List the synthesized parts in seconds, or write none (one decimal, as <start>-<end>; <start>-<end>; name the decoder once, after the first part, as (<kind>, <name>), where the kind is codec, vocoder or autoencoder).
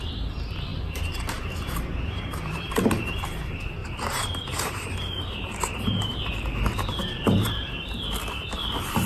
0.7-3.1 (vocoder, BigVGAN v2); 3.8-7.7